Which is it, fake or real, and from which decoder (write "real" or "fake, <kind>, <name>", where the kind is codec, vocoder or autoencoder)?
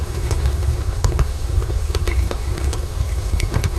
fake, codec, SNAC